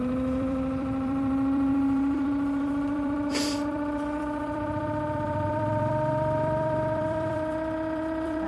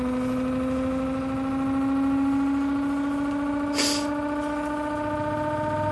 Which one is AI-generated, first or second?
first